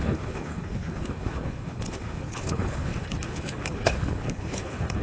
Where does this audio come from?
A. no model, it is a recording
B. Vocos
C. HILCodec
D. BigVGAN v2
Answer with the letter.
C